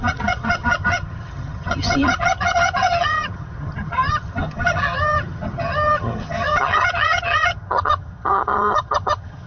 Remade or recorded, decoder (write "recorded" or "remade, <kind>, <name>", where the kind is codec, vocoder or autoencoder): remade, vocoder, HiFi-GAN